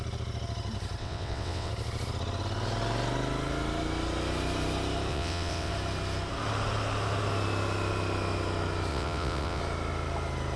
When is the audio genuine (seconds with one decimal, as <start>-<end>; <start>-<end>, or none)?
0.0-1.0; 1.7-5.1; 5.7-8.9; 9.6-10.6